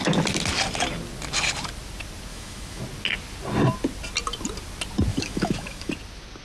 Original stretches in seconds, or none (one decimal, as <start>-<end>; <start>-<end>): 0.0-2.3; 2.8-5.1; 5.9-6.4